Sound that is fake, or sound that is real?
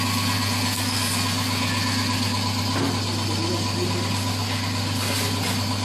real